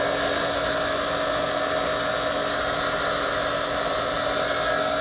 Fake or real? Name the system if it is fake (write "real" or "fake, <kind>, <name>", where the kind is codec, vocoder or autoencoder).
real